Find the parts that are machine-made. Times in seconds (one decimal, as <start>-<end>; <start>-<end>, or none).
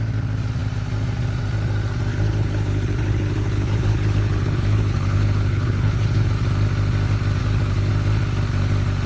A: 2.1-6.3; 7.4-7.9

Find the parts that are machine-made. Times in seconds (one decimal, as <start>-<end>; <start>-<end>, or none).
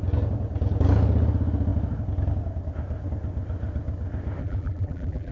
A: 4.4-5.3